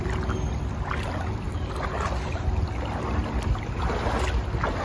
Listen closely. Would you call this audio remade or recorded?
recorded